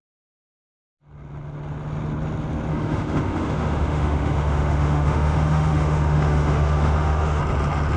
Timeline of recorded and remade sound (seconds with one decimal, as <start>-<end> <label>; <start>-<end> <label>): 0.0-2.7 recorded; 2.7-7.4 remade; 7.4-8.0 recorded